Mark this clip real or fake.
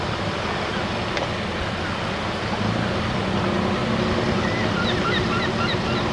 real